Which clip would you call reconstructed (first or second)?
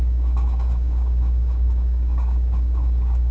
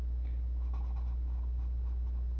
first